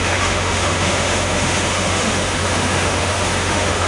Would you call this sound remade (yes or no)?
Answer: yes